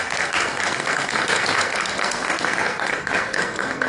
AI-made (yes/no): yes